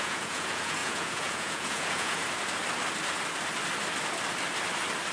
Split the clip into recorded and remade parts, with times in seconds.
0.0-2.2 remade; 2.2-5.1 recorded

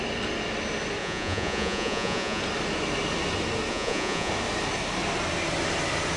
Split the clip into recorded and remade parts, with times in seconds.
0.0-1.0 recorded; 1.0-2.4 remade; 2.4-3.7 recorded; 3.7-4.3 remade; 4.3-6.2 recorded

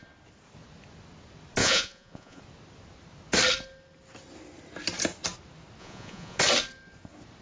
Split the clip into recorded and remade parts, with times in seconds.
0.0-1.6 recorded; 1.6-2.4 remade; 2.4-5.8 recorded; 5.8-6.4 remade; 6.4-7.4 recorded

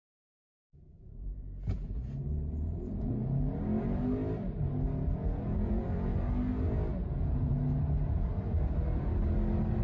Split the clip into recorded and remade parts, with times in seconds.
0.0-3.1 remade; 3.1-5.2 recorded; 5.2-5.8 remade; 5.8-6.9 recorded; 6.9-7.5 remade; 7.5-9.8 recorded

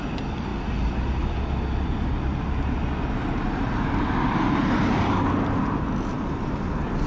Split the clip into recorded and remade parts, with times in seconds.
0.0-7.1 recorded

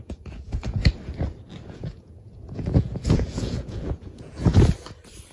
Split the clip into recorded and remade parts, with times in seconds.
0.0-0.8 remade; 0.8-1.7 recorded; 1.7-4.5 remade; 4.5-5.3 recorded

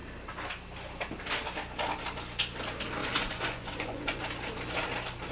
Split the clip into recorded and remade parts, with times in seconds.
0.0-3.0 recorded; 3.0-4.2 remade; 4.2-5.3 recorded